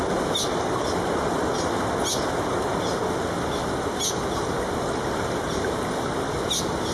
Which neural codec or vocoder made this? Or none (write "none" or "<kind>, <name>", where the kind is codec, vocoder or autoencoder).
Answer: none